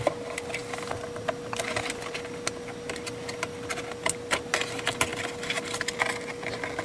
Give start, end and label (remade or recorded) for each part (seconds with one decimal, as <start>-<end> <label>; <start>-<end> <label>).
0.0-6.8 recorded